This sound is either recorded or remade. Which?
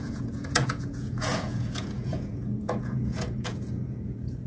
remade